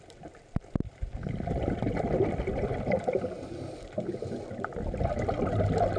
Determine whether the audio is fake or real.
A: real